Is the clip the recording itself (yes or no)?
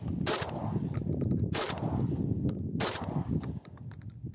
yes